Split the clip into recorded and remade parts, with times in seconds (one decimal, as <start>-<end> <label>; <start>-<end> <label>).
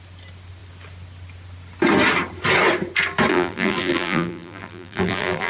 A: 0.0-3.3 recorded; 3.3-5.5 remade